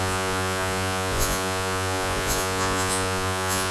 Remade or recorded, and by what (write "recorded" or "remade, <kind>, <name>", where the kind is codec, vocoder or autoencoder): remade, vocoder, Vocos